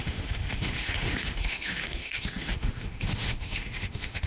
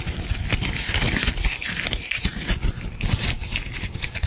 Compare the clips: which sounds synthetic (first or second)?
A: first